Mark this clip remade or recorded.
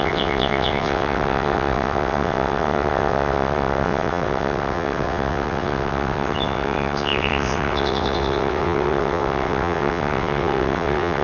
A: remade